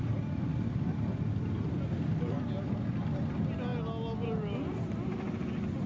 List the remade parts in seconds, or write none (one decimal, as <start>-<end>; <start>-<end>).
none